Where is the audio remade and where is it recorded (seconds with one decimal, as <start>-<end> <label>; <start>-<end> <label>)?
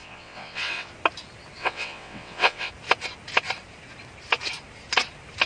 0.0-0.9 remade; 0.9-1.6 recorded; 1.6-2.7 remade; 2.7-5.5 recorded